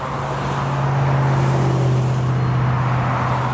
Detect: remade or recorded recorded